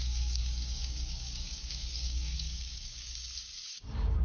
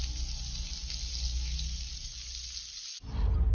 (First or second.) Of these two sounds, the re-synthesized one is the first